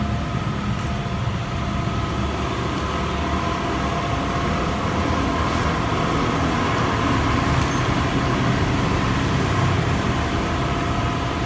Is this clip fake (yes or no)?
no